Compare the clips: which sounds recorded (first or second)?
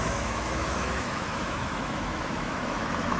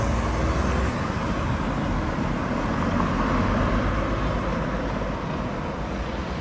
second